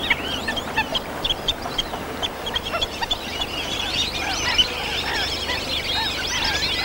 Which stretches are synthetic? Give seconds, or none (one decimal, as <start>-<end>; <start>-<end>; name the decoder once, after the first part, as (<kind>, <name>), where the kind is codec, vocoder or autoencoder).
0.9-5.0 (vocoder, BigVGAN v2)